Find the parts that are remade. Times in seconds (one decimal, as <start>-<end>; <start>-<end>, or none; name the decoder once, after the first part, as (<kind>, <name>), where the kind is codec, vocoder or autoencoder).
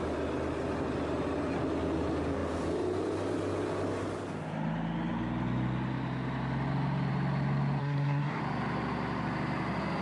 7.8-8.4 (codec, SNAC)